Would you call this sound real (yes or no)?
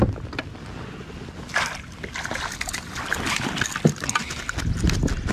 yes